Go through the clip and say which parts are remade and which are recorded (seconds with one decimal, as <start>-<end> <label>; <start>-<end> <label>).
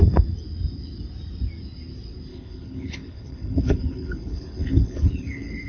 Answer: 0.0-2.3 recorded; 2.3-5.7 remade